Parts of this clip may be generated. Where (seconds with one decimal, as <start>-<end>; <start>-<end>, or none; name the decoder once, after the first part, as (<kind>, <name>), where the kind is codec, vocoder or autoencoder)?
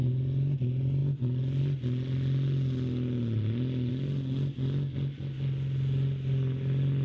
none